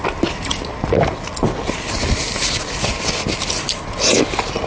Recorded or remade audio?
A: recorded